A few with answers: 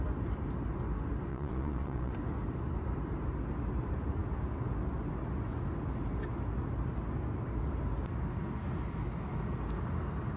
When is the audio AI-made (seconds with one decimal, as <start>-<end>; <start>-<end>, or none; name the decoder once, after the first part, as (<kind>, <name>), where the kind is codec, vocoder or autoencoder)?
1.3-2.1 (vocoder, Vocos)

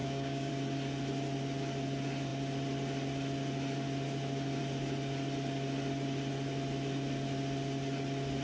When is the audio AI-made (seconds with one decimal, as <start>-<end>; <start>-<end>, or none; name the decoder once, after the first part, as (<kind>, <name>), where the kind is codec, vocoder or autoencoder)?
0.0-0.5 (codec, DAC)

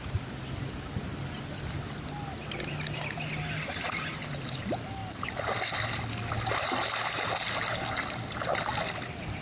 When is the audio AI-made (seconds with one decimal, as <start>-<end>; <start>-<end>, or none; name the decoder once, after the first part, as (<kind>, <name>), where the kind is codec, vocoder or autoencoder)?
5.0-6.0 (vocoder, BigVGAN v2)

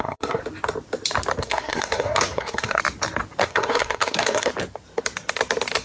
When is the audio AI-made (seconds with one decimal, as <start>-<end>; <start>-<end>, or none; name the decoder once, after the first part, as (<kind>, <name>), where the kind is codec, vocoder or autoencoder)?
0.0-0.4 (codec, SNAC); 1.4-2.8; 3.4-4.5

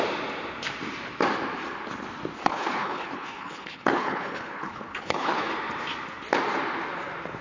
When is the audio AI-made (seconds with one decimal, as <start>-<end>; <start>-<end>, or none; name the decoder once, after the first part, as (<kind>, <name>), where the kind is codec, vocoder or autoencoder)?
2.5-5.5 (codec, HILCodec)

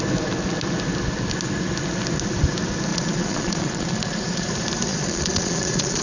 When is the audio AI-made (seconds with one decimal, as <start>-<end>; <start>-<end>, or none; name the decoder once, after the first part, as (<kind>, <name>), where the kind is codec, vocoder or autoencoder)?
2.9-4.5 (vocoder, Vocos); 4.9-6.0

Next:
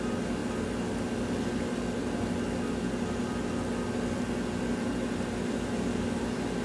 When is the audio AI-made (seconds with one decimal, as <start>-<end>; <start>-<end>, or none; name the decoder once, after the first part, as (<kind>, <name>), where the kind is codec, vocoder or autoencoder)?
none

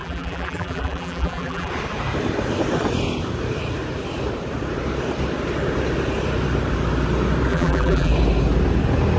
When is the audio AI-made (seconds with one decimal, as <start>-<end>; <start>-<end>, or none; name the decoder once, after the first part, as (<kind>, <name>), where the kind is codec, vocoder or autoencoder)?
0.0-1.7 (vocoder, BigVGAN v2); 7.5-8.1